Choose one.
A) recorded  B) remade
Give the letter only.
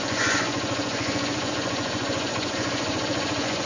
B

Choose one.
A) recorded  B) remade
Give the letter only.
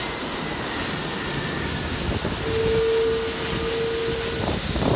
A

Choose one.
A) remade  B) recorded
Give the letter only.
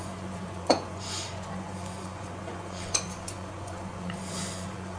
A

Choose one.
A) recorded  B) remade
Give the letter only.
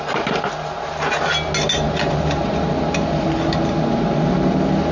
A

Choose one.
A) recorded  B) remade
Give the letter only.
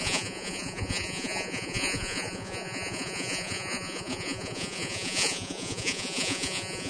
B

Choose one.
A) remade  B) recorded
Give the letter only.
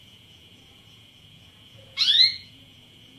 A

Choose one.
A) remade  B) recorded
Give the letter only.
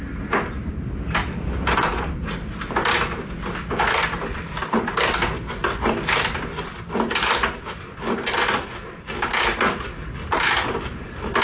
B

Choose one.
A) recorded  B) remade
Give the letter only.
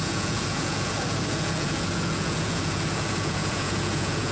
B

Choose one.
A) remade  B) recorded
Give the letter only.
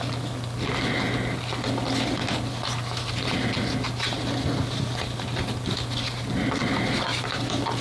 B